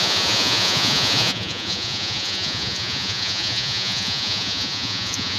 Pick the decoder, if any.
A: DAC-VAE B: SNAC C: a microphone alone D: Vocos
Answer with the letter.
D